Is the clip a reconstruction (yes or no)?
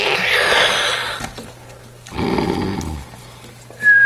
no